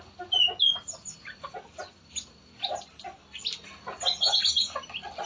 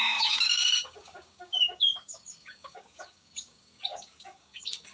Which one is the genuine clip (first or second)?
first